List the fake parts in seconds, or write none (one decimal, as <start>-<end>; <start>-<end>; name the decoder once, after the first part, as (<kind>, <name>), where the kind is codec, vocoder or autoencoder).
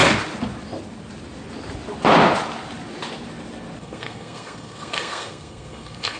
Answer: 3.8-6.2 (codec, SNAC)